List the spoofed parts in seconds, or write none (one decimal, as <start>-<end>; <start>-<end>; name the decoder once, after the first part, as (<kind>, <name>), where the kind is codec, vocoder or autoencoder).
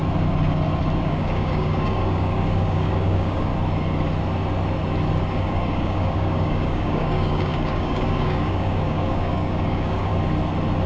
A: 1.0-3.5 (codec, DAC); 5.3-10.1